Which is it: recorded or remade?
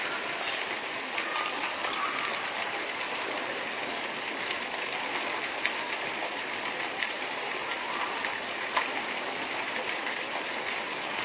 recorded